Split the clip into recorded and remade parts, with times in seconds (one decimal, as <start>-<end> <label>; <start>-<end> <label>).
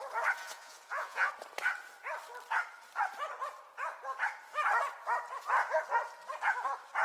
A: 0.0-0.4 recorded; 0.4-1.3 remade; 1.3-7.0 recorded